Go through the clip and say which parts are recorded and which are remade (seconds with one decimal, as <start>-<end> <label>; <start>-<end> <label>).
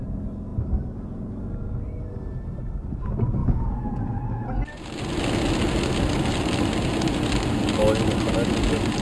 0.0-3.4 recorded; 3.4-4.2 remade; 4.2-9.0 recorded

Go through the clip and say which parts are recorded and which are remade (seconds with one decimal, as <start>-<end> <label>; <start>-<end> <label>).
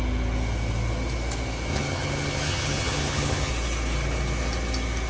0.0-1.7 recorded; 1.7-3.5 remade; 3.5-5.1 recorded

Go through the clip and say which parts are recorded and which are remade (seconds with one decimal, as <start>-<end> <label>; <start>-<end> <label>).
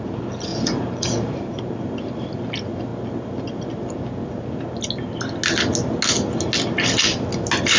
0.0-0.5 recorded; 0.5-1.6 remade; 1.6-7.8 recorded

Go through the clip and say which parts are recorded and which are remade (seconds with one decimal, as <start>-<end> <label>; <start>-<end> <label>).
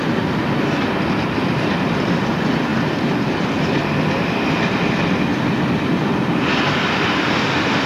0.0-7.9 recorded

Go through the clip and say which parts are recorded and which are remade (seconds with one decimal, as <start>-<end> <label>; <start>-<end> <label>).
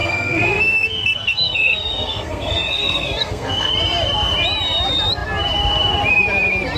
0.0-3.7 remade; 3.7-6.8 recorded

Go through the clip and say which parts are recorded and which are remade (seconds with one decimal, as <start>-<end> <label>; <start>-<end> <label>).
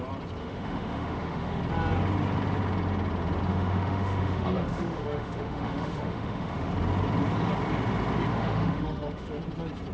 0.0-0.4 recorded; 0.4-1.6 remade; 1.6-3.5 recorded; 3.5-6.7 remade; 6.7-8.3 recorded; 8.3-9.4 remade; 9.4-9.9 recorded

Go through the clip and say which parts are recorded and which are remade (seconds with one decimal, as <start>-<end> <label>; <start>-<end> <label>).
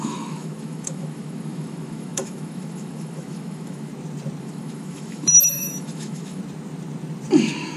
0.0-3.9 remade; 3.9-4.4 recorded; 4.4-6.4 remade; 6.4-7.8 recorded